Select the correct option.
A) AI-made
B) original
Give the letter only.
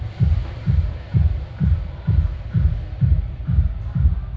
A